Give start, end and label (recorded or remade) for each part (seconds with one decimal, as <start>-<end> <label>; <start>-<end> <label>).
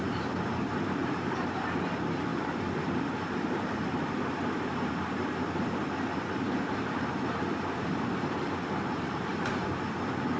0.0-9.3 remade; 9.3-10.4 recorded